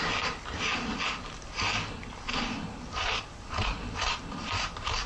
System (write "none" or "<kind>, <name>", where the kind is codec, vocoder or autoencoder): none